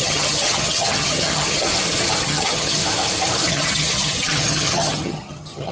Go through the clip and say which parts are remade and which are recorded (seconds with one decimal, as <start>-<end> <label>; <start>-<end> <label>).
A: 0.0-1.7 remade; 1.7-2.2 recorded; 2.2-2.8 remade; 2.8-3.5 recorded; 3.5-5.7 remade